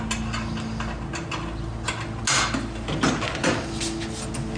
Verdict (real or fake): real